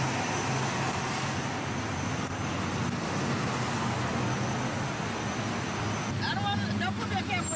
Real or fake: real